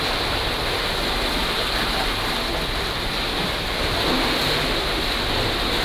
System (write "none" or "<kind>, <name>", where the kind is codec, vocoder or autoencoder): none